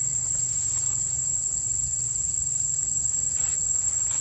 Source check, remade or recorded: remade